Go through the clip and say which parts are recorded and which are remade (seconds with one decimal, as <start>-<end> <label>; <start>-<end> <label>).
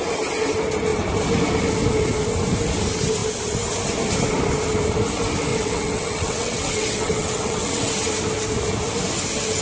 0.0-5.5 recorded; 5.5-7.9 remade; 7.9-9.6 recorded